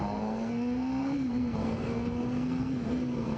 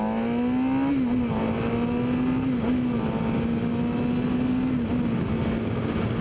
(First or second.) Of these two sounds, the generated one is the first